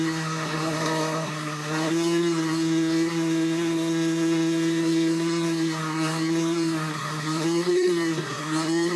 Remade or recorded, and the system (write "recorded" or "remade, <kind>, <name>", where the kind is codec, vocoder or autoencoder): remade, codec, SNAC